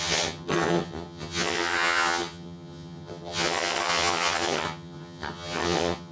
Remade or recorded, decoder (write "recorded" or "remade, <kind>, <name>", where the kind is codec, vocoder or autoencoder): remade, vocoder, HiFi-GAN